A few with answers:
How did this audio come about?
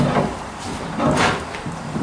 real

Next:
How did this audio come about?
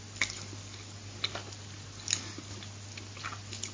real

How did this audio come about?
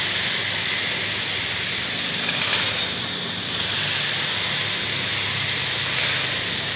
real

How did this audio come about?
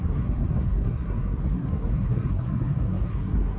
fake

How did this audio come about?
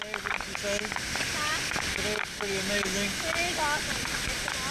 real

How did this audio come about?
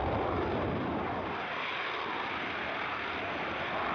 real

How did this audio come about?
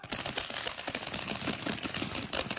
real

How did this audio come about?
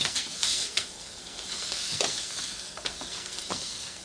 fake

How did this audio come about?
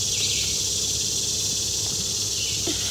real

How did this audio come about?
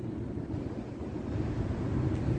real